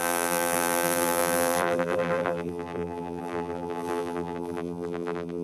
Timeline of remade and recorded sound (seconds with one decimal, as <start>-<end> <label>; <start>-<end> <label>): 0.0-5.4 remade